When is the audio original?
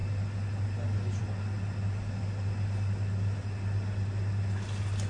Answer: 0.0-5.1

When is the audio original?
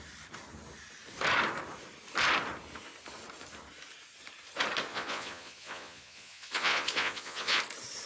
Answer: 0.0-4.9; 7.6-8.1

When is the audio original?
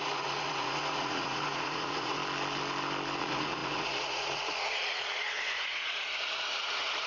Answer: 2.2-3.2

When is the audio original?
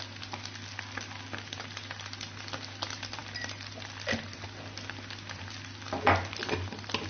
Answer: 0.0-7.1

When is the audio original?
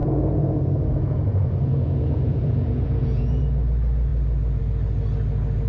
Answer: 3.4-5.7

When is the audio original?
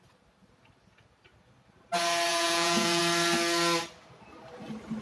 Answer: 0.0-2.3; 3.0-5.0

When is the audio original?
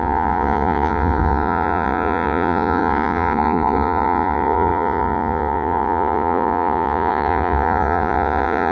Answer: none